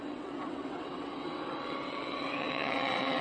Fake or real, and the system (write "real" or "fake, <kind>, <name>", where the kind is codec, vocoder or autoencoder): fake, vocoder, WaveNeXt